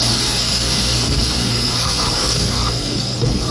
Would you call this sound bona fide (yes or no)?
no